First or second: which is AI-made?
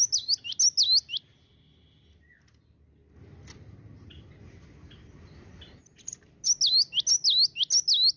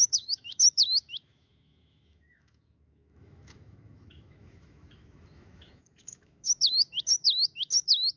second